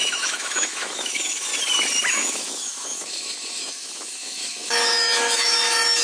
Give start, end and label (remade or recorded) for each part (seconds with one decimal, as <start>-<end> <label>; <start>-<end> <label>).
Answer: 0.0-1.5 remade; 1.5-2.1 recorded; 2.1-6.0 remade